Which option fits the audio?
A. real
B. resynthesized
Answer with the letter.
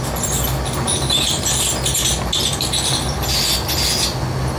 A